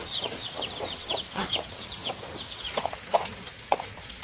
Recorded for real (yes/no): no